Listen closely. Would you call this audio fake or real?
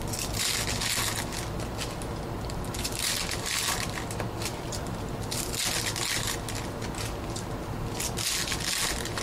real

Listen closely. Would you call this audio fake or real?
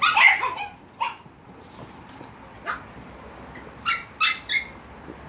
fake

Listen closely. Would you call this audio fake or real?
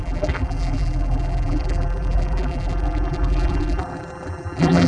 fake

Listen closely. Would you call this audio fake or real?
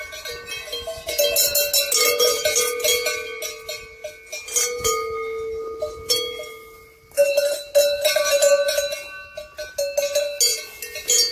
real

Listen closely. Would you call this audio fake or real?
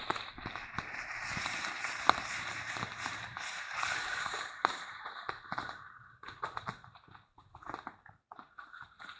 fake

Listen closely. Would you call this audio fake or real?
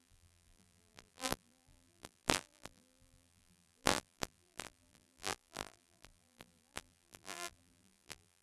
fake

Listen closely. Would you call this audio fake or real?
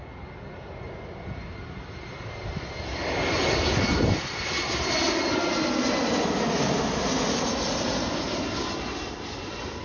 real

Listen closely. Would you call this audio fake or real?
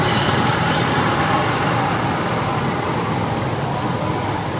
real